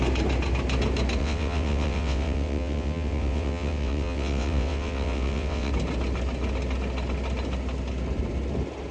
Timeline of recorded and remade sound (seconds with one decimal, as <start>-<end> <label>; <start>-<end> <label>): 0.0-1.2 recorded; 1.2-5.7 remade; 5.7-8.9 recorded